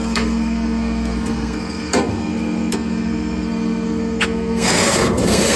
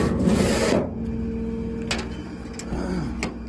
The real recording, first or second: second